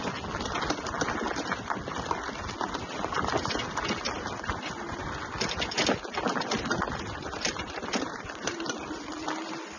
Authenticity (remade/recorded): recorded